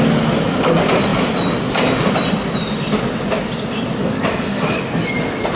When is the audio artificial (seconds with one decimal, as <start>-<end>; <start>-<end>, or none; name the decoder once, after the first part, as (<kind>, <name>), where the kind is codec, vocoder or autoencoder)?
4.0-4.8 (codec, DAC)